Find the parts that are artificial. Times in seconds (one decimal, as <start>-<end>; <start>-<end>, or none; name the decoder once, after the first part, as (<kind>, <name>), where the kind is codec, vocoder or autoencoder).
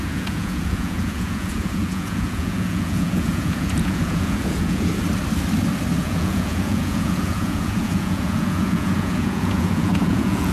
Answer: 0.0-4.9 (vocoder, Vocos); 6.0-10.5